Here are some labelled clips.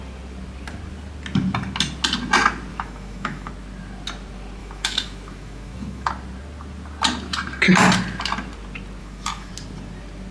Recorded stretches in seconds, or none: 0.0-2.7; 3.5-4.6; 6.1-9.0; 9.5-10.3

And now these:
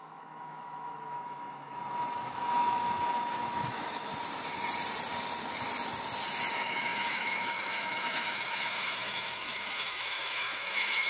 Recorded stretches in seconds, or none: 4.1-6.5

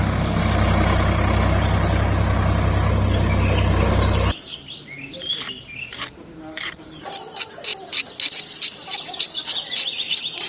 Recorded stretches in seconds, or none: 0.0-10.5